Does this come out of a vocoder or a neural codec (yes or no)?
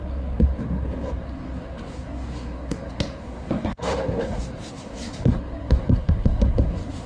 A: yes